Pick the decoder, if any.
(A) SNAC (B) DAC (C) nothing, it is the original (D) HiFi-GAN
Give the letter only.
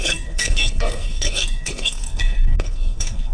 A